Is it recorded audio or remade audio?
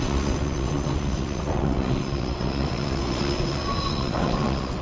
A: remade